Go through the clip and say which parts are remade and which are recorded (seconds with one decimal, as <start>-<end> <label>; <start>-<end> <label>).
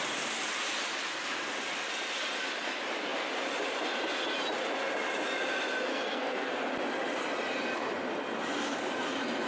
0.0-5.9 recorded; 5.9-6.7 remade; 6.7-9.5 recorded